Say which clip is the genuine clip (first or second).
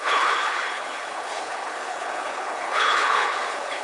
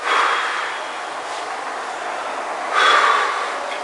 second